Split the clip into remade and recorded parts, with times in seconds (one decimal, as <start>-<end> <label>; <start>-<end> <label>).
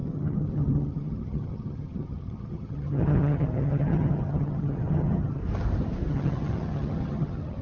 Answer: 0.0-5.4 remade; 5.4-6.1 recorded; 6.1-7.6 remade